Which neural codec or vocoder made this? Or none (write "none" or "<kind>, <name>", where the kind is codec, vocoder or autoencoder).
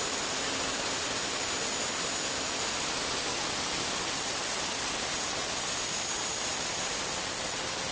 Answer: none